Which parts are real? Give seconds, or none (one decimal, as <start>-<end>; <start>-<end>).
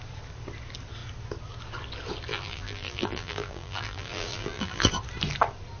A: 0.0-2.3; 4.9-5.8